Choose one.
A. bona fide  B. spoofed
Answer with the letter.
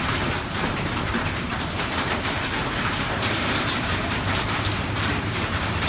B